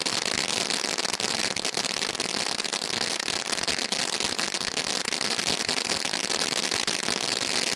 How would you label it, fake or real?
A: real